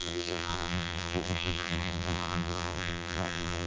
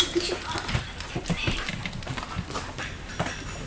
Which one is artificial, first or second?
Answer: first